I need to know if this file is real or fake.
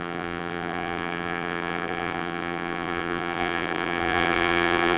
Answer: fake